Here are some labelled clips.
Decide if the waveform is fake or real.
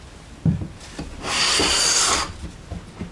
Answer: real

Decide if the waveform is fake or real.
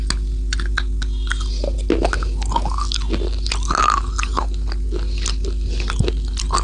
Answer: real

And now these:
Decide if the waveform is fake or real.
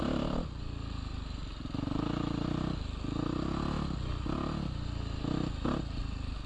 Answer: real